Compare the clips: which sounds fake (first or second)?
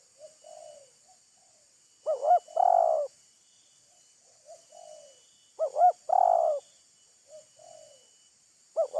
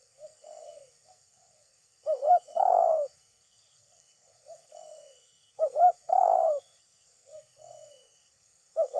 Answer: second